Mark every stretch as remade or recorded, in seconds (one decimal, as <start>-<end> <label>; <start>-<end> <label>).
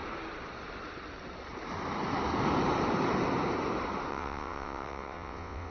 0.0-4.1 recorded; 4.1-5.7 remade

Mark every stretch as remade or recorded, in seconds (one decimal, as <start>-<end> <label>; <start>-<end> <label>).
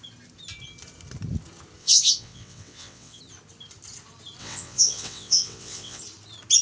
0.0-1.8 recorded; 1.8-3.2 remade; 3.2-4.4 recorded; 4.4-6.0 remade; 6.0-6.6 recorded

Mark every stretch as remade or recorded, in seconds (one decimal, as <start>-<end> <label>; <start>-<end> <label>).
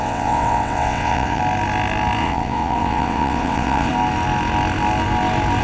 0.0-1.4 remade; 1.4-2.2 recorded; 2.2-3.9 remade; 3.9-5.6 recorded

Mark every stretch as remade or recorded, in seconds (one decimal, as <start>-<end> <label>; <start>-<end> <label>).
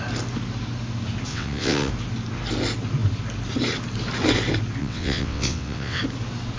0.0-1.3 recorded; 1.3-1.9 remade; 1.9-4.8 recorded; 4.8-6.0 remade; 6.0-6.6 recorded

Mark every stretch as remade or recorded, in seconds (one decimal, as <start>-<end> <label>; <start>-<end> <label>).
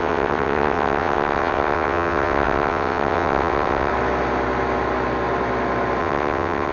0.0-3.9 remade; 3.9-6.0 recorded; 6.0-6.7 remade